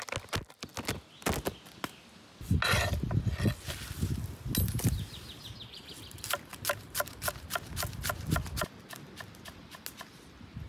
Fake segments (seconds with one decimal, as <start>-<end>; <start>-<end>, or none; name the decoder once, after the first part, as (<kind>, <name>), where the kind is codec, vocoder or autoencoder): none